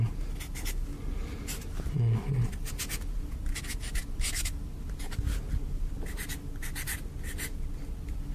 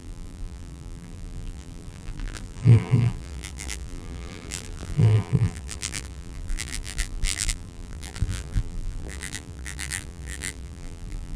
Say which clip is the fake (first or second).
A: second